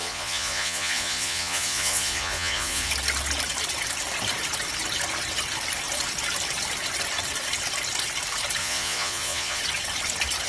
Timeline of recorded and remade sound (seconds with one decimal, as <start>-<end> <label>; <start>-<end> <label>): 0.0-2.9 remade; 2.9-8.6 recorded; 8.6-9.6 remade; 9.6-10.5 recorded